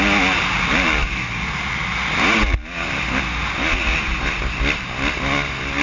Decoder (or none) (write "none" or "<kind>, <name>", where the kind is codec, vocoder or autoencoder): none